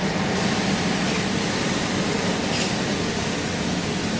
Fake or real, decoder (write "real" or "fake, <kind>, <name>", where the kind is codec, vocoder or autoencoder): real